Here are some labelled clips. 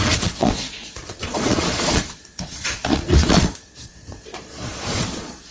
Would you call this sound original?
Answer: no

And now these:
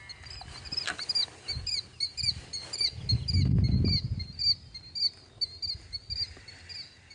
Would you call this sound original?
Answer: yes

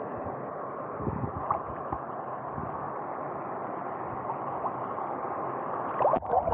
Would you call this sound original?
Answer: yes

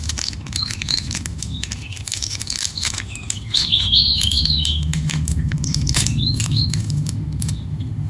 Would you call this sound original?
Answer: no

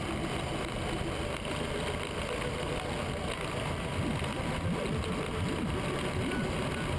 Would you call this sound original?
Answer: yes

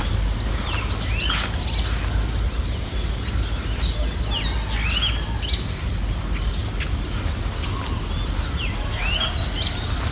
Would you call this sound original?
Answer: yes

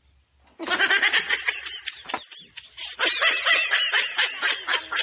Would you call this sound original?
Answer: yes